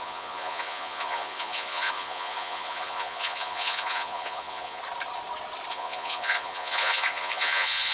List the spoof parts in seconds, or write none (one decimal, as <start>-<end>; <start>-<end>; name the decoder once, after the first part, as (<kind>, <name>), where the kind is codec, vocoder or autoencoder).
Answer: 0.0-4.8 (vocoder, Vocos); 5.7-7.9